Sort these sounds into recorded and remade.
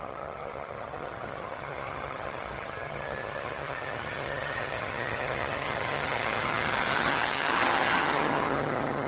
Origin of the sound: remade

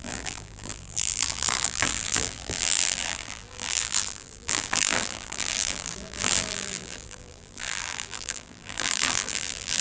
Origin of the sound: remade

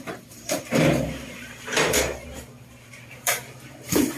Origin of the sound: remade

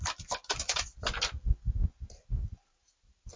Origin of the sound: recorded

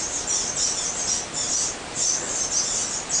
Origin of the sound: recorded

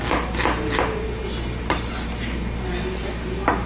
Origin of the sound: recorded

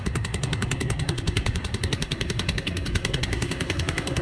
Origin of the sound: remade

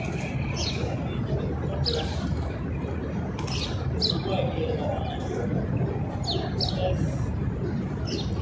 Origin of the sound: recorded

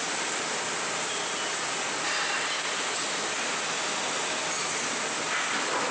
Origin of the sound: recorded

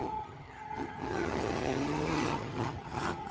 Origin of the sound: remade